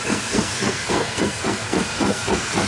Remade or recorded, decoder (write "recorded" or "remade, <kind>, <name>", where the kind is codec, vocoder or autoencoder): remade, codec, SNAC